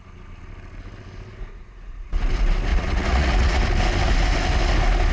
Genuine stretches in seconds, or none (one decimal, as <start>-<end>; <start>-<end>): 0.0-1.5; 2.2-2.7; 3.6-5.1